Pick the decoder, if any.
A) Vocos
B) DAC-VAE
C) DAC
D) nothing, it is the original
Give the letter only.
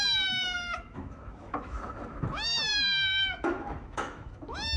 B